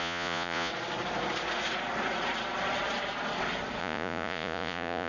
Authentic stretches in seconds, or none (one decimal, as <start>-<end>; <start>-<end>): 0.7-3.8